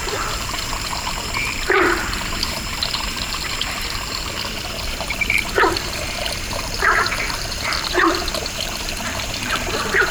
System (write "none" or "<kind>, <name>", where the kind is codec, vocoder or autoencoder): vocoder, BigVGAN v2